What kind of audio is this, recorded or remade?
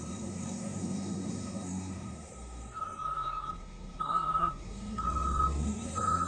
remade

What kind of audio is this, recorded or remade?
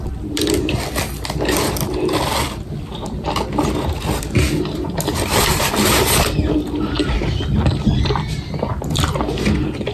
recorded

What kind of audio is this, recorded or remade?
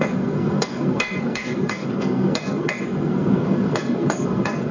remade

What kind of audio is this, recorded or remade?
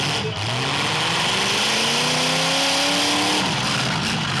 recorded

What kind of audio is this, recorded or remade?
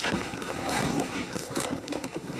remade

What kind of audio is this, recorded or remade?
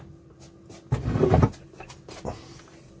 recorded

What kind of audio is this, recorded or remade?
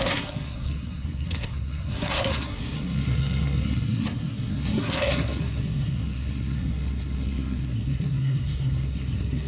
remade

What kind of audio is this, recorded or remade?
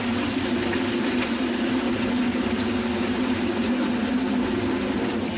recorded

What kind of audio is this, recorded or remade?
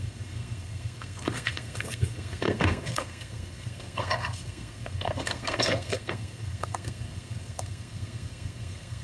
remade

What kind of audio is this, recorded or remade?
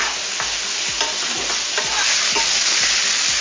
recorded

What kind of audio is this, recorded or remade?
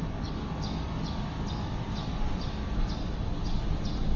recorded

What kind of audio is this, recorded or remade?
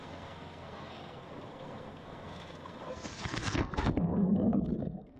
remade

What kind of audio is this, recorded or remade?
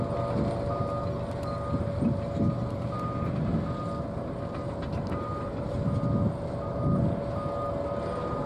recorded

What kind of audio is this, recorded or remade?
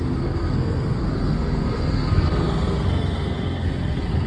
remade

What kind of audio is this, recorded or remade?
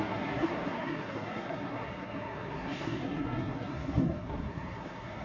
remade